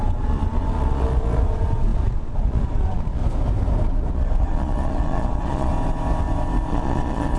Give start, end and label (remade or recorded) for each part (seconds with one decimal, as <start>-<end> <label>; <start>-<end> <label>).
0.0-3.2 remade; 3.2-4.1 recorded; 4.1-5.7 remade; 5.7-6.7 recorded; 6.7-7.4 remade